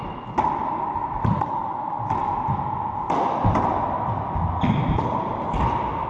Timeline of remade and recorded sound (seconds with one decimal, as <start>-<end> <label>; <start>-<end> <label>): 0.0-6.1 recorded